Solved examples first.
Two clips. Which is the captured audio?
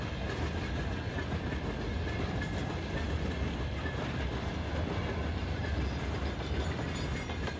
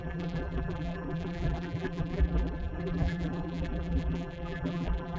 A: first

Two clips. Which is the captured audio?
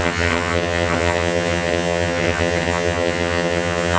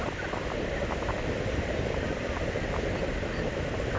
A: second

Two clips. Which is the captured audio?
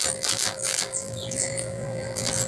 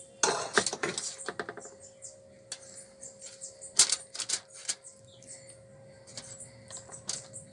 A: second